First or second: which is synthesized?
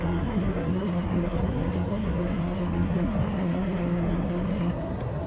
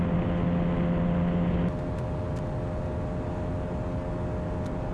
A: first